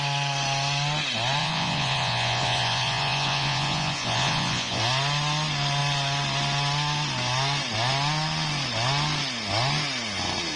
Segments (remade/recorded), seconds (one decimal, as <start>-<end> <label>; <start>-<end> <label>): 0.0-1.4 recorded; 1.4-4.8 remade; 4.8-10.6 recorded